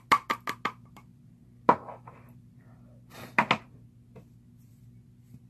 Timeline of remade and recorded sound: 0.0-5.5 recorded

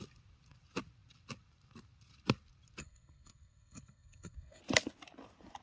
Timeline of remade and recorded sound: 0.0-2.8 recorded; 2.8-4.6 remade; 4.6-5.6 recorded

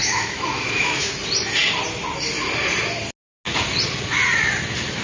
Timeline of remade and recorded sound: 0.0-1.1 remade; 1.1-5.0 recorded